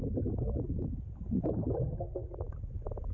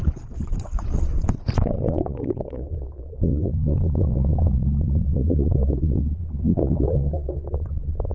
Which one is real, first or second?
first